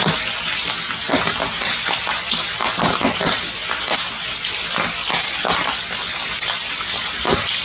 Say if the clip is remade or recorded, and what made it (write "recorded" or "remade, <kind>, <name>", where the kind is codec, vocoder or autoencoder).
recorded